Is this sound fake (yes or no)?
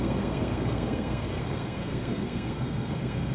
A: yes